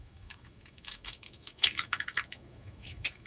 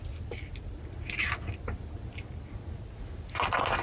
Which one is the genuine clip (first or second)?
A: second